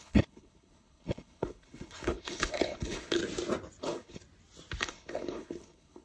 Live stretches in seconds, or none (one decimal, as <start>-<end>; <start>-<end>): 3.2-3.8; 4.2-4.8